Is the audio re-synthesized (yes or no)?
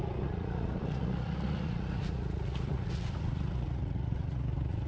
yes